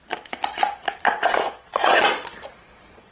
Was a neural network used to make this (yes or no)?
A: yes